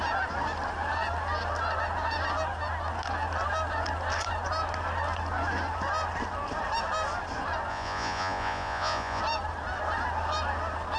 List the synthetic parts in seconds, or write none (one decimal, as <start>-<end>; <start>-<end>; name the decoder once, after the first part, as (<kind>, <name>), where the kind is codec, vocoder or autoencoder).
7.7-9.2 (vocoder, Vocos)